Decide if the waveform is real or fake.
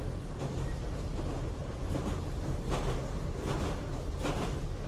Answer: real